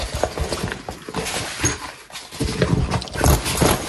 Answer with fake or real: real